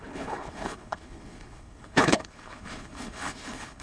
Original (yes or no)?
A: no